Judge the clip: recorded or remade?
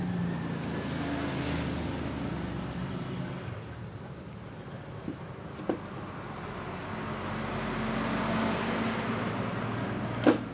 recorded